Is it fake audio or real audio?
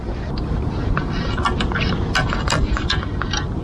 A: real